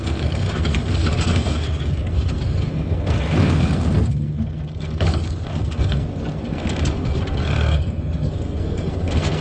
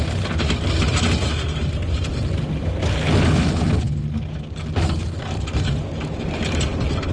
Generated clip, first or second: first